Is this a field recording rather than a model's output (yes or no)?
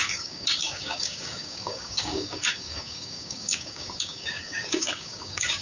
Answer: no